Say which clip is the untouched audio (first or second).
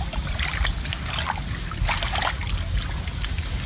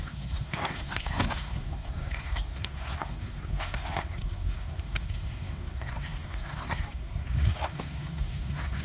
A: first